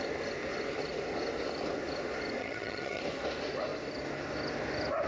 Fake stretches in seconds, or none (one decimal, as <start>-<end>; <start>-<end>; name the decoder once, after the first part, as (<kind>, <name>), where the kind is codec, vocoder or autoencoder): 2.4-3.0 (vocoder, HiFi-GAN)